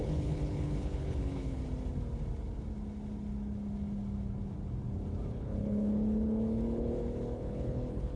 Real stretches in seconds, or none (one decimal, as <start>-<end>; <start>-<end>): 1.6-5.3

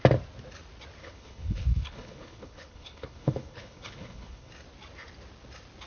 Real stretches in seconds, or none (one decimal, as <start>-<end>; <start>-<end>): 0.0-1.0; 4.5-5.9

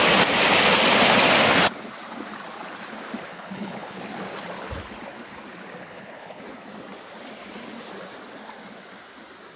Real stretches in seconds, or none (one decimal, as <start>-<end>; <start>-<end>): 0.0-3.3; 4.0-5.8; 6.4-9.6

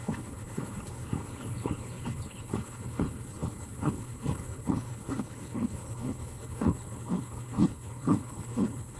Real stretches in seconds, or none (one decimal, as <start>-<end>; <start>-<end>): none

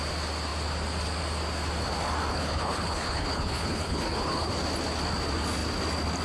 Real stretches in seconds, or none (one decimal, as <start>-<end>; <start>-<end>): 0.0-2.3; 4.5-6.2

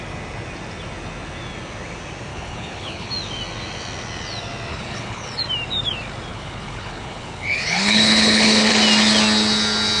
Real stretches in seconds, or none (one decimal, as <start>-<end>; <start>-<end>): 0.0-2.3; 3.1-4.7; 5.4-6.3; 8.7-10.0

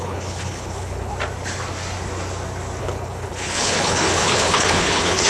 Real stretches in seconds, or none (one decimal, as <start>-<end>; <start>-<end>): 1.1-2.8

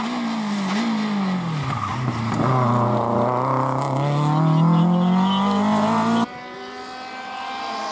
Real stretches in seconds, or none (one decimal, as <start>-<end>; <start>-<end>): 0.0-7.9